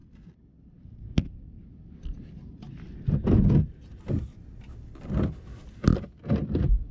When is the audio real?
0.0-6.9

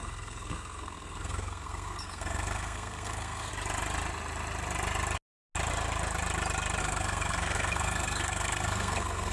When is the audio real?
3.5-6.8